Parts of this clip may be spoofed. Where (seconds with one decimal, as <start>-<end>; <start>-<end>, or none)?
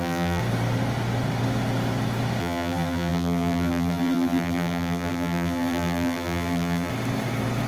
0.0-0.4; 2.4-6.9